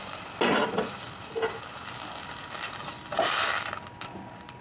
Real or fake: real